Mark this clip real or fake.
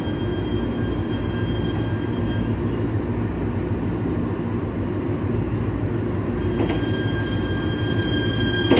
real